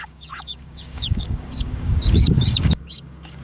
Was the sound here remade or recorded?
remade